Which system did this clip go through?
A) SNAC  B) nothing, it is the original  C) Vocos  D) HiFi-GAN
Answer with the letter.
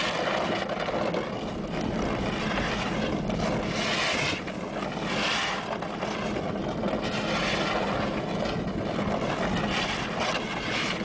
B